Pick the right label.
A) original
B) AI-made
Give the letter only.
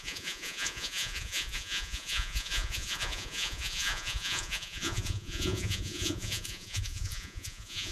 B